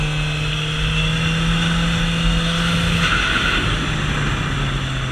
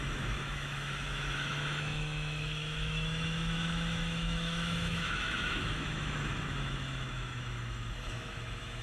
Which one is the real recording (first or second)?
first